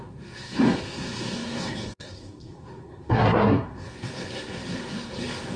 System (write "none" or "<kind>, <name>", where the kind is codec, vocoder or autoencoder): codec, SNAC